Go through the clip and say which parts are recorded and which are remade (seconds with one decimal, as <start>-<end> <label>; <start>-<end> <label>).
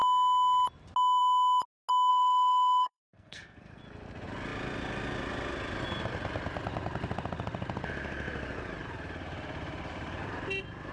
0.0-2.1 recorded; 2.1-3.8 remade; 3.8-10.9 recorded